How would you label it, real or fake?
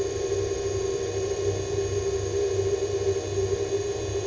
real